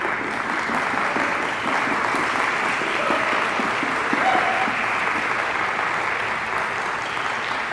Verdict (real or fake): real